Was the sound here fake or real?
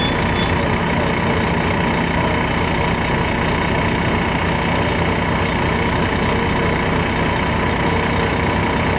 real